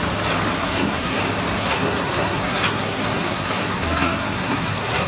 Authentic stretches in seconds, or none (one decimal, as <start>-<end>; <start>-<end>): 0.0-0.6; 1.2-1.6

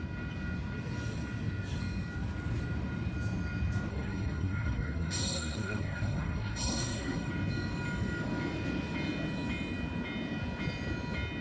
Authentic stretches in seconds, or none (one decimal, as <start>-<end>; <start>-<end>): 0.0-3.9; 7.3-11.4

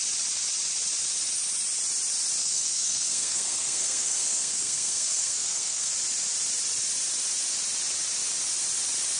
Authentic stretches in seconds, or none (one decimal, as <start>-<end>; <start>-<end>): 0.0-2.4; 5.9-9.2